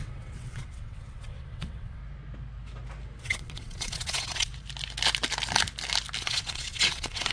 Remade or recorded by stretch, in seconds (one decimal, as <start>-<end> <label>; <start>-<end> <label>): 0.0-2.0 remade; 2.0-3.2 recorded; 3.2-4.5 remade; 4.5-6.2 recorded; 6.2-7.3 remade